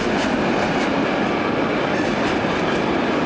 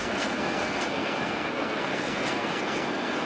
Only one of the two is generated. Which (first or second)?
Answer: second